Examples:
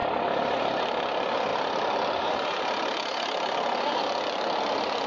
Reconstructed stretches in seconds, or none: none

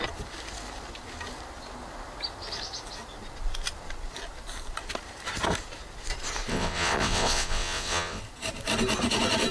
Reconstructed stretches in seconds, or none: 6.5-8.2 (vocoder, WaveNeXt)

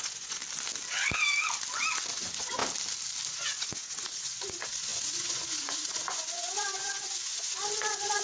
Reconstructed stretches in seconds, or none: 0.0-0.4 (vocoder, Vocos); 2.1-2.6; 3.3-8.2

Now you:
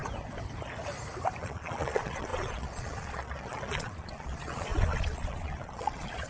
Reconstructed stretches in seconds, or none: 1.4-6.3 (vocoder, Vocos)

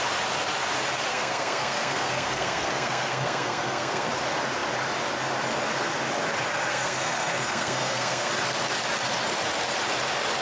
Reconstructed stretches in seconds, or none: 1.1-4.1 (codec, SNAC); 6.7-8.3